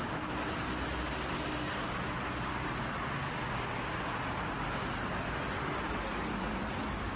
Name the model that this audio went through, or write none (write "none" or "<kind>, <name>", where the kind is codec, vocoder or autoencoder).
none